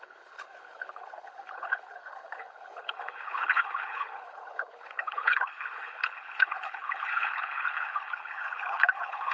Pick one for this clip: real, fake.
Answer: fake